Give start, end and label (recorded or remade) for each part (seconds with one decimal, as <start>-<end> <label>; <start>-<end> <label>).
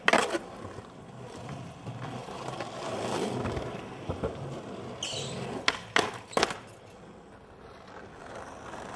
0.0-2.2 recorded; 2.2-2.8 remade; 2.8-9.0 recorded